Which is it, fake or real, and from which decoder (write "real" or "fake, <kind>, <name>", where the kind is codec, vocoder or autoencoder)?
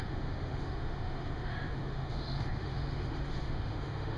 fake, autoencoder, DAC-VAE